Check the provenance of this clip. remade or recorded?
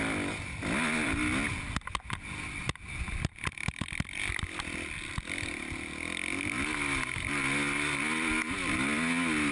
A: recorded